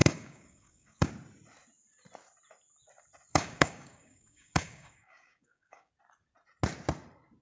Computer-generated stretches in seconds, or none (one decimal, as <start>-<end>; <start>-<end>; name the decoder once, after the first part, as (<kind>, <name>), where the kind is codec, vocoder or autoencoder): 0.0-1.1 (codec, DAC); 3.3-5.9